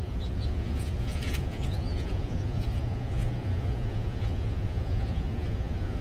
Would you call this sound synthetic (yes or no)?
yes